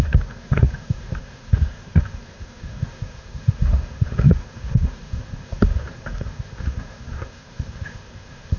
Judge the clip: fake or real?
fake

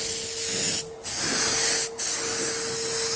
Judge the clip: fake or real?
real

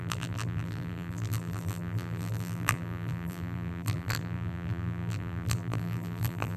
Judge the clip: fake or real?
fake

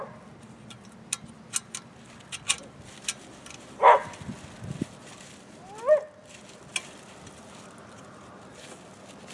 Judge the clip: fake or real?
real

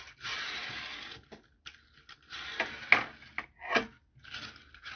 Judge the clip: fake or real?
real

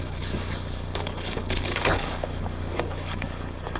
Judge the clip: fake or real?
fake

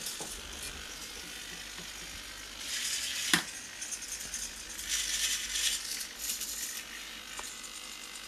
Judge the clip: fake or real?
real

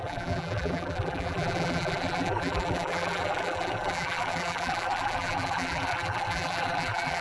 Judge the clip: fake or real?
fake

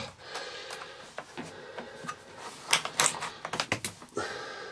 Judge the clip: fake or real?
real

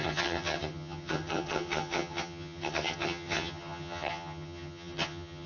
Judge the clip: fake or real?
fake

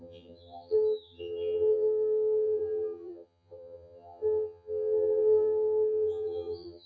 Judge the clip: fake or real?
fake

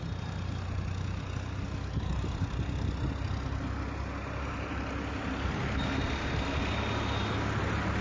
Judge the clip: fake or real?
real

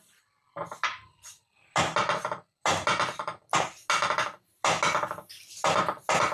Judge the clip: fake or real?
real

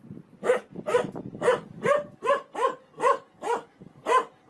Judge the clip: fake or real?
real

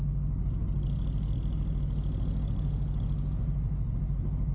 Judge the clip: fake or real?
real